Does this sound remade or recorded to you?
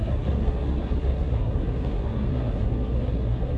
remade